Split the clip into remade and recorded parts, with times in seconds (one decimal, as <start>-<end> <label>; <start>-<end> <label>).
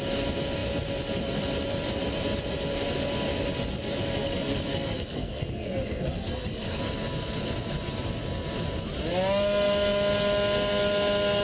0.0-4.1 recorded; 4.1-6.8 remade; 6.8-11.4 recorded